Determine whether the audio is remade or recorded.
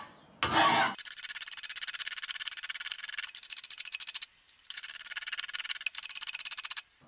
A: recorded